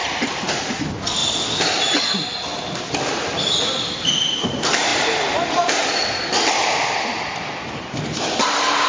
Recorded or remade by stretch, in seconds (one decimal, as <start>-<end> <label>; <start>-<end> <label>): 0.0-8.9 recorded